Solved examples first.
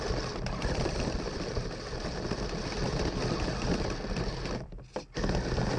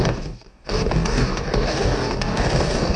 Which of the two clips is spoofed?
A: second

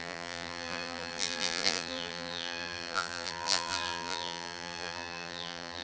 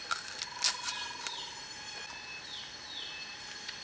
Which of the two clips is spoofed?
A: first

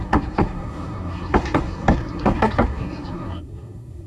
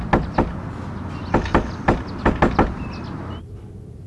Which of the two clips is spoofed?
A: first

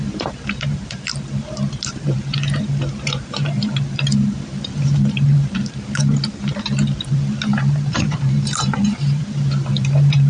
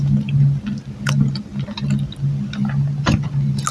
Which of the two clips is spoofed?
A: first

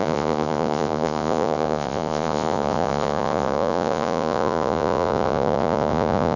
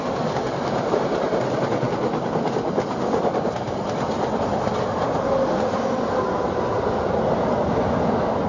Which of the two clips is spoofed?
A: first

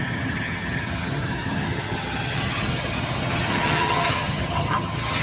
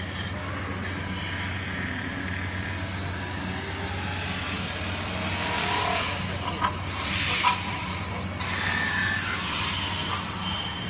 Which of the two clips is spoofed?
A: first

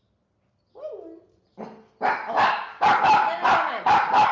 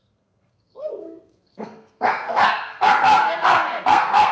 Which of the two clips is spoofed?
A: second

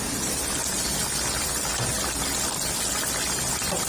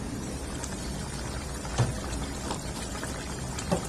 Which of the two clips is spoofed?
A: second